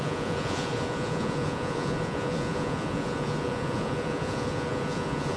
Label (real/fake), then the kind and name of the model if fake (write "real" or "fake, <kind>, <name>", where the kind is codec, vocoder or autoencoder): fake, vocoder, Vocos